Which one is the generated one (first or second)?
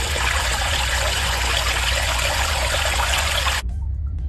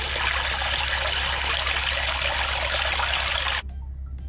first